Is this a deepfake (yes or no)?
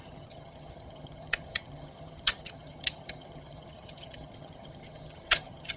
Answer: yes